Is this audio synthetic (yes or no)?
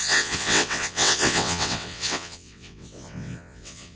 yes